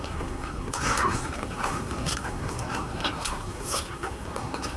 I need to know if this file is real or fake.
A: fake